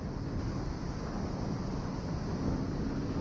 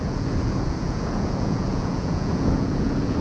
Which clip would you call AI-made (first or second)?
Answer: second